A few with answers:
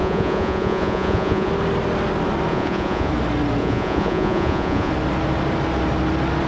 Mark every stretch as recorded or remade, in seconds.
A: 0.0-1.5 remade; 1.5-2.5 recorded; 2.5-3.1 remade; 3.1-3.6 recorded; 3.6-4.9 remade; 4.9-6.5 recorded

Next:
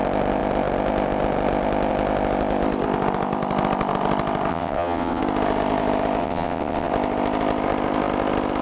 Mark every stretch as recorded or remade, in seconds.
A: 0.0-4.5 recorded; 4.5-5.2 remade; 5.2-6.2 recorded; 6.2-6.9 remade; 6.9-8.6 recorded

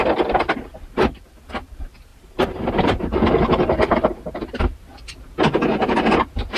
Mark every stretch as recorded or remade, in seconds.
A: 0.0-2.1 recorded; 2.1-4.2 remade; 4.2-6.6 recorded